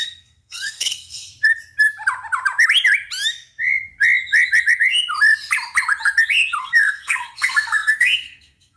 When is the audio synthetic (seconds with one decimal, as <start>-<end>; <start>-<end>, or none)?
0.0-1.3; 6.6-8.8